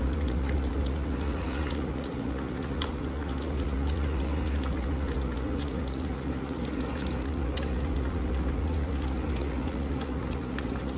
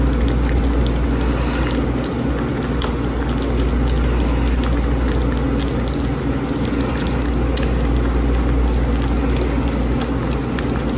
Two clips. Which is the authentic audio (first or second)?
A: second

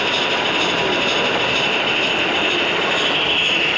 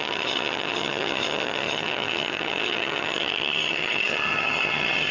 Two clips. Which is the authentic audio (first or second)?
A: first